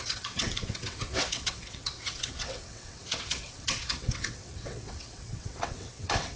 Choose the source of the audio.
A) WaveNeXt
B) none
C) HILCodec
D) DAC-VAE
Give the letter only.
A